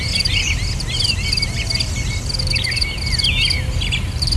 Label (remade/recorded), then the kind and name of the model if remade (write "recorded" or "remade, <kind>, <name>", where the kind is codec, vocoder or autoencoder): recorded